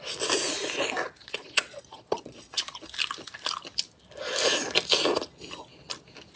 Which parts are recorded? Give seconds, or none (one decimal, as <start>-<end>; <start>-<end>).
0.0-1.2; 2.8-6.4